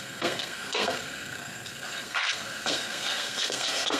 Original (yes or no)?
no